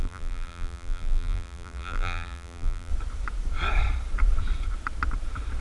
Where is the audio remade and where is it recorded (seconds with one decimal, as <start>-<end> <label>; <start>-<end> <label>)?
0.0-2.9 remade; 2.9-5.6 recorded